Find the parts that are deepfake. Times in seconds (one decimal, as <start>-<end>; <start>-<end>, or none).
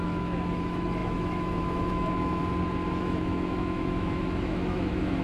0.0-2.4; 3.0-5.2